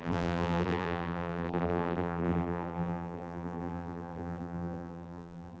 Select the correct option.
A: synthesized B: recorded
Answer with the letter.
A